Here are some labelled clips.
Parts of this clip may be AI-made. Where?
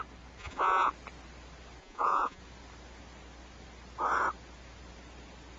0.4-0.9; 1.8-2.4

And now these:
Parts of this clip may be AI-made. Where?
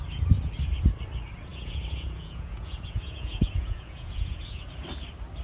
1.5-4.6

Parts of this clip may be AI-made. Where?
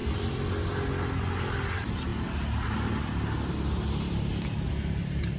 none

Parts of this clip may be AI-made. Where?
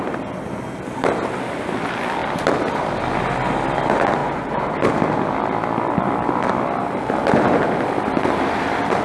4.2-4.7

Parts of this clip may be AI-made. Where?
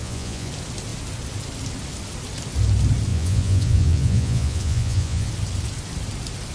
0.0-0.5; 3.1-5.3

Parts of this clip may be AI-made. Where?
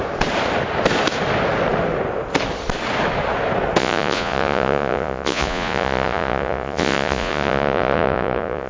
3.8-8.7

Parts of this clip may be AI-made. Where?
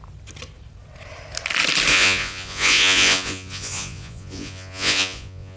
1.9-5.6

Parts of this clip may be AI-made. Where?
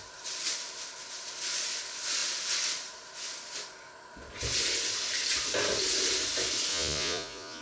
6.7-7.6